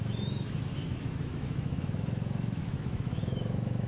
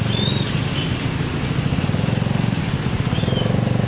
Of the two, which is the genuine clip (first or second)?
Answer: second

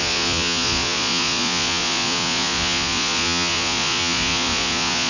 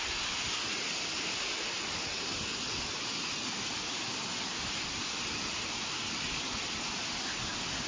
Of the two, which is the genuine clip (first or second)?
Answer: second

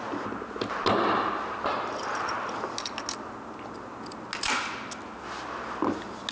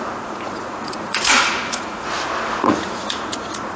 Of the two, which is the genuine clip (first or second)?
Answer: first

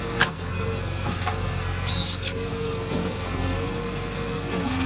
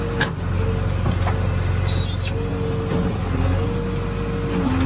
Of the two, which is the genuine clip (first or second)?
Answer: second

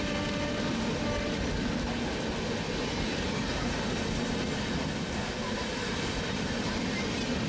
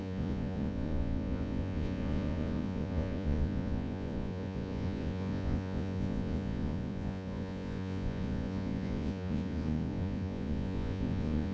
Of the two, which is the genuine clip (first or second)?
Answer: first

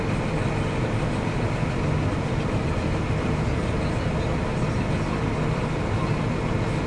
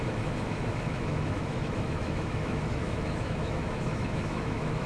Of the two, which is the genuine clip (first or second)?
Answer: first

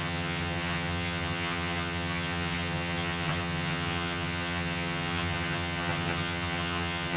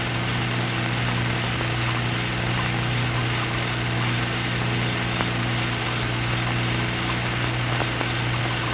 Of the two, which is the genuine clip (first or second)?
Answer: second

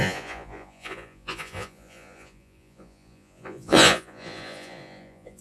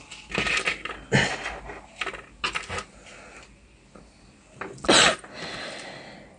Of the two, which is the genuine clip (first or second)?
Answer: second